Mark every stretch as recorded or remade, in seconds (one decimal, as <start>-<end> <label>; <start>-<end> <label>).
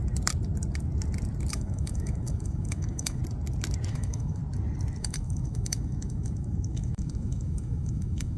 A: 0.0-1.5 recorded; 1.5-3.2 remade; 3.2-3.9 recorded; 3.9-4.4 remade; 4.4-5.0 recorded; 5.0-8.4 remade